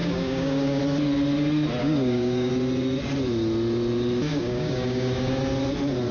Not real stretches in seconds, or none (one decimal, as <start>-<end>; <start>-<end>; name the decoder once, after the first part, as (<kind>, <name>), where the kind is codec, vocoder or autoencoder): 0.0-0.8 (codec, DAC); 1.8-2.5; 4.3-5.4